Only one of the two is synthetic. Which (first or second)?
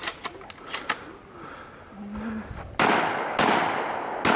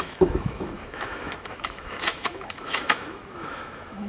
second